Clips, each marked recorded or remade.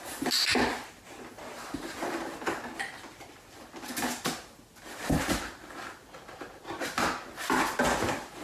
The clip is recorded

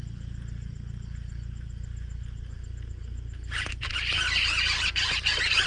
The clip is recorded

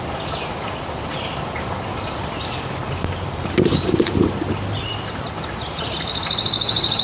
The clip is remade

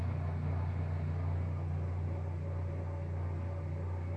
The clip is recorded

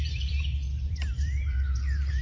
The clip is remade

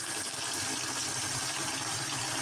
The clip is remade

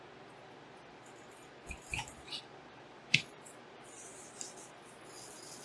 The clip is remade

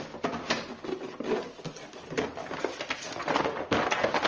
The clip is recorded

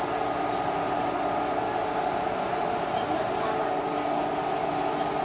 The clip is recorded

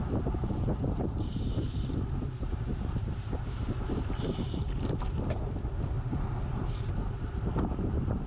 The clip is remade